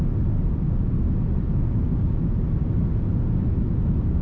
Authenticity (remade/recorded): recorded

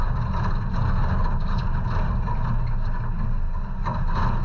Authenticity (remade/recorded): recorded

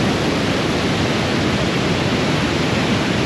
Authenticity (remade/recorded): recorded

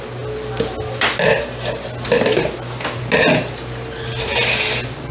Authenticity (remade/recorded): recorded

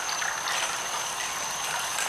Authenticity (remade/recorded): recorded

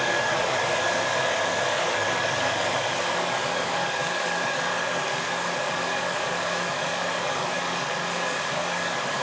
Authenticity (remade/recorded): remade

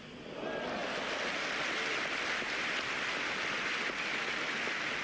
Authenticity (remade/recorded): recorded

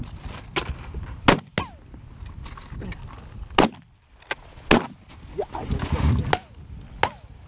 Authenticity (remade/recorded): recorded